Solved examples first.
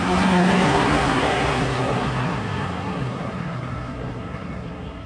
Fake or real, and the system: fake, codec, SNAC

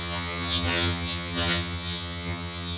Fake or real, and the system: fake, vocoder, HiFi-GAN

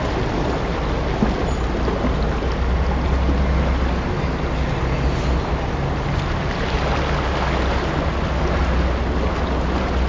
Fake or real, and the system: real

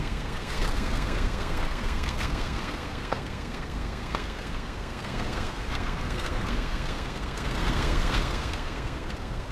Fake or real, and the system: fake, codec, SNAC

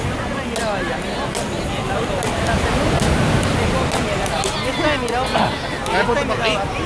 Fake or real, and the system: real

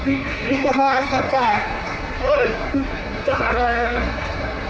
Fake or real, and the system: fake, codec, SNAC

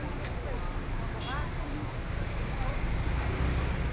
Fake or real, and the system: real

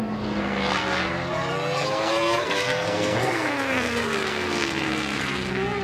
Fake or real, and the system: fake, codec, SNAC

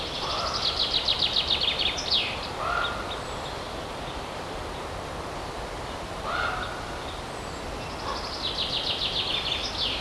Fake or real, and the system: real